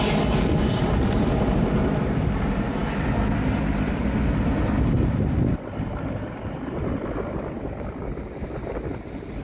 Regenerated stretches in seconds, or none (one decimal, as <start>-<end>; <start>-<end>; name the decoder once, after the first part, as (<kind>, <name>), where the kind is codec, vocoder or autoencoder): none